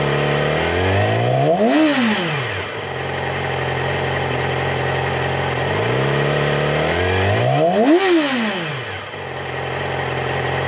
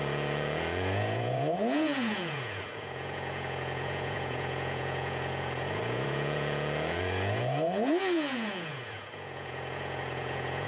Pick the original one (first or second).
first